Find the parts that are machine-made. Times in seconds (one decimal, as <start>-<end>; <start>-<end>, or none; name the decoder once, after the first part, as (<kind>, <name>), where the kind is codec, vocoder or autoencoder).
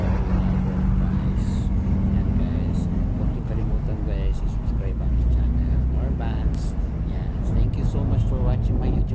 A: none